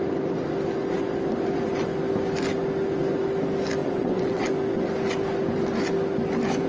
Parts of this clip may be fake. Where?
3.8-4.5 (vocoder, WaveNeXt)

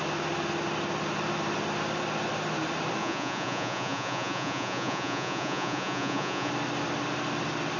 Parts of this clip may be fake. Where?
3.0-6.5 (vocoder, Vocos)

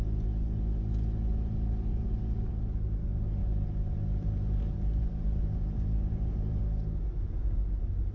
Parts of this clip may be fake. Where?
1.9-2.5 (vocoder, BigVGAN v2); 3.4-6.6

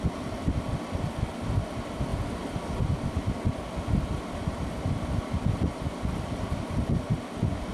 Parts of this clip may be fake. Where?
none

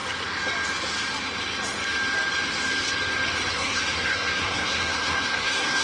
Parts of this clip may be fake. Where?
3.5-5.8 (codec, SNAC)

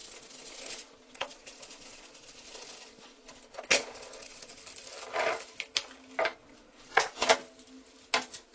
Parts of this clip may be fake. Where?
0.0-4.6 (vocoder, Vocos); 6.4-7.3

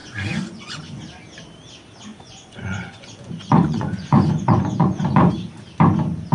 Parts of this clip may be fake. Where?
0.0-1.0 (vocoder, Vocos); 2.1-5.3